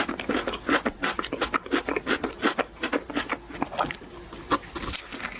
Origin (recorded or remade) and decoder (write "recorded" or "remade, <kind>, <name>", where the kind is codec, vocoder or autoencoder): recorded